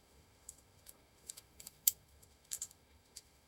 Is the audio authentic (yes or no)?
no